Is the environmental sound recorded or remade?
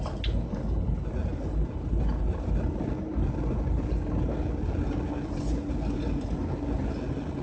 recorded